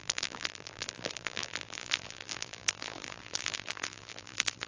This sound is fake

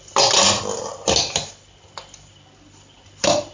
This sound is real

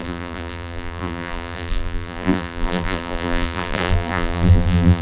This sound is fake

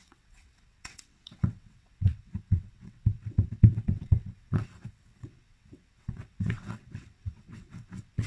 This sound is fake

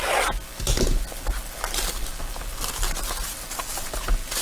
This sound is real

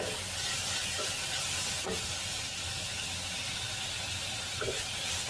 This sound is real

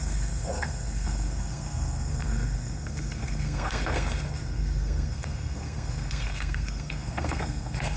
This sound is fake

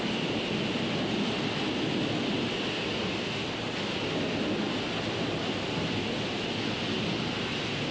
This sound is real